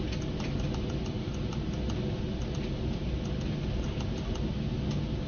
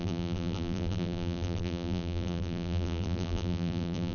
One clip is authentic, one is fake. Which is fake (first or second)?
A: second